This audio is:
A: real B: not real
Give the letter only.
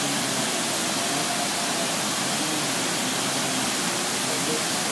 A